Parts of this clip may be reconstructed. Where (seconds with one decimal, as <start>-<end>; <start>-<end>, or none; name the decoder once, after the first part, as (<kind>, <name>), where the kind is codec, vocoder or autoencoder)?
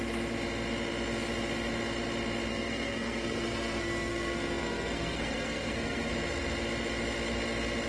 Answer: 2.5-6.1 (codec, SNAC)